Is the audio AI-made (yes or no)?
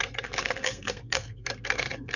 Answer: yes